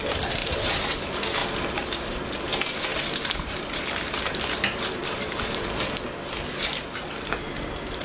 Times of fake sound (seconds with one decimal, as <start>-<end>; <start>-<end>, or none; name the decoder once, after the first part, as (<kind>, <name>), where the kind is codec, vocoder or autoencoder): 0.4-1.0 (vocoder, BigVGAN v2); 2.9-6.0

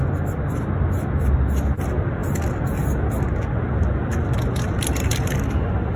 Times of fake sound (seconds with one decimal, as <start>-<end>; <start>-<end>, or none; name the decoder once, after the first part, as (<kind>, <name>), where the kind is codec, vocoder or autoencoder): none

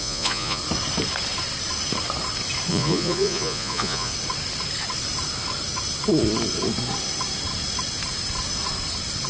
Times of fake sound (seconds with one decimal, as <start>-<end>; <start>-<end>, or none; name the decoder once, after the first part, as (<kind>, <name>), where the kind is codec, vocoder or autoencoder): 0.0-0.6 (vocoder, Vocos); 2.7-4.1

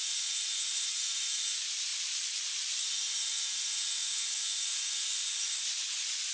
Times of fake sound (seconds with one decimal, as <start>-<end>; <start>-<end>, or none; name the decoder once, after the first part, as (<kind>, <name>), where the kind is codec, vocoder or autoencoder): 1.9-2.9 (vocoder, BigVGAN v2)

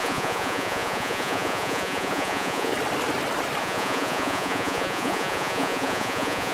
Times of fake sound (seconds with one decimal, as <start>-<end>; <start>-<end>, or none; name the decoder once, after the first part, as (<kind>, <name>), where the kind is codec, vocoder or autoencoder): 0.0-2.7 (vocoder, Vocos); 3.6-6.5

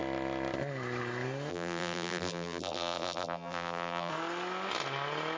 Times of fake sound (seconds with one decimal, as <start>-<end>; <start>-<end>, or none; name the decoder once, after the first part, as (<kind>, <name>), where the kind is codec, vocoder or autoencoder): 1.5-4.1 (vocoder, BigVGAN v2)

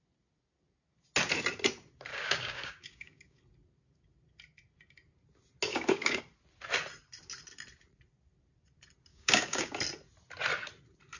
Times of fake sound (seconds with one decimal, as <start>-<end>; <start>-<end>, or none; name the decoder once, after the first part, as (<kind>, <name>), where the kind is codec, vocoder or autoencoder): 2.1-3.4 (codec, DAC); 5.7-6.2; 9.1-9.8

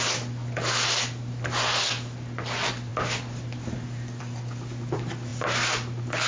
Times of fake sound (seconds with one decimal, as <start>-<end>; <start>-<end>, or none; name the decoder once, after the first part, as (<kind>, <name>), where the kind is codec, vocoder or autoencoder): none